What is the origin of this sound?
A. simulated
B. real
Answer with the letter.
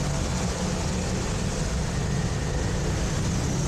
B